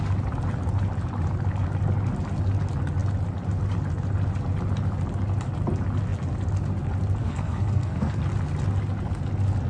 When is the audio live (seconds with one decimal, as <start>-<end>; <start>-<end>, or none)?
0.0-7.2; 8.2-9.7